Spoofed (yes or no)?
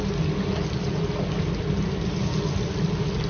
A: no